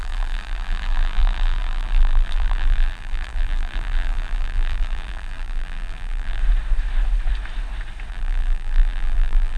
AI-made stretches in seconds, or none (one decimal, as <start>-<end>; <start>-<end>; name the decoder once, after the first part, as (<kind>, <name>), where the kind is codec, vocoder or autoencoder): 0.0-6.4 (vocoder, BigVGAN v2); 8.1-9.6